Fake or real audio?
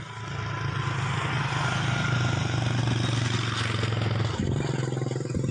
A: real